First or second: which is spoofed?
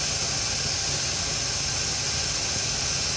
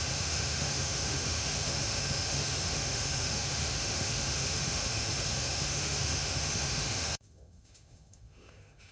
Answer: second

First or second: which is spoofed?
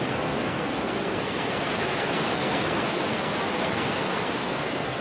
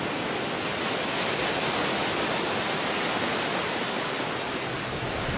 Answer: first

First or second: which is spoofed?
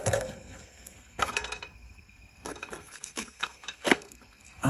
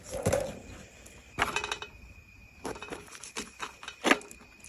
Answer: first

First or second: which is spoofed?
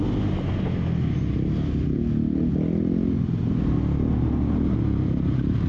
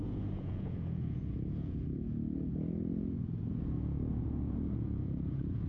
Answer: second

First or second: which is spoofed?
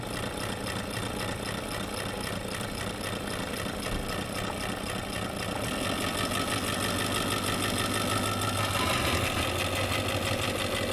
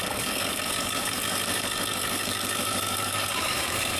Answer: second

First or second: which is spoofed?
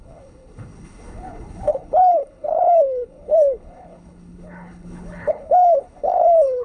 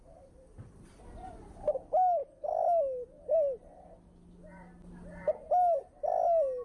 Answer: first